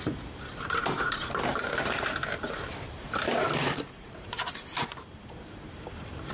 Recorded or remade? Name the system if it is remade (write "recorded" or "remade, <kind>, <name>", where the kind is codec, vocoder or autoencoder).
remade, vocoder, BigVGAN v2